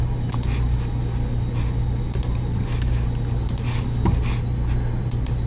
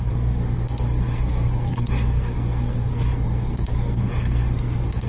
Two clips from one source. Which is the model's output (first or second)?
second